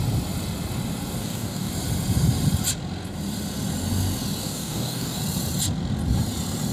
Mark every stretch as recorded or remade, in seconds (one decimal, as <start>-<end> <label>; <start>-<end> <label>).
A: 0.0-1.2 recorded; 1.2-1.7 remade; 1.7-4.4 recorded; 4.4-5.2 remade; 5.2-6.7 recorded